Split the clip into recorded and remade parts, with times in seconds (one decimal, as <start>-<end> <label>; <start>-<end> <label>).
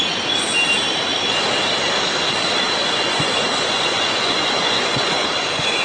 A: 0.0-2.8 recorded; 2.8-5.8 remade